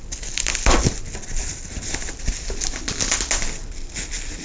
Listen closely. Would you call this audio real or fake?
real